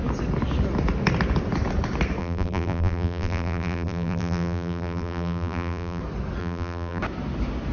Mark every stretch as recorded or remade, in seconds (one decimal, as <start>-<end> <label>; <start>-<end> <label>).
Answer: 0.0-2.2 recorded; 2.2-6.0 remade; 6.0-6.4 recorded; 6.4-7.0 remade; 7.0-7.7 recorded